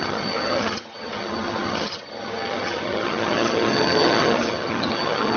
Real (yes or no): no